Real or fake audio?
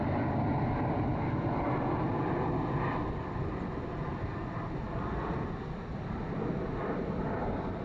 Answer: real